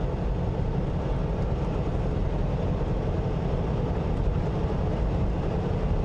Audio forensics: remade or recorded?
recorded